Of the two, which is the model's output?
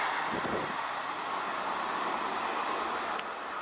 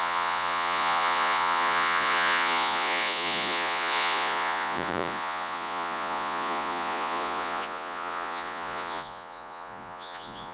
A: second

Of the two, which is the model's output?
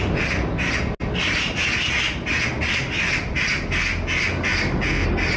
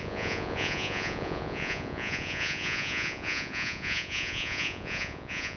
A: second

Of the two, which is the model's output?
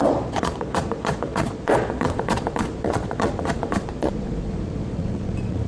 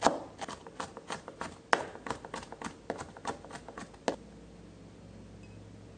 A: first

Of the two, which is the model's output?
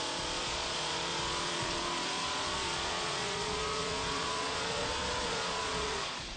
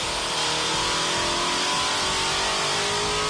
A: first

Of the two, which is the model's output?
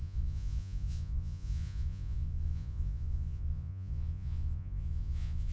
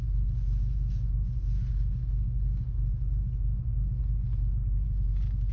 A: first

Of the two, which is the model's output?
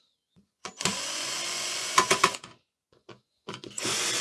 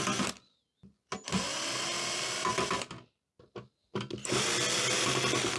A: first